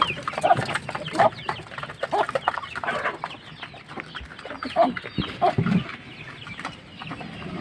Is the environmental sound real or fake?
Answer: real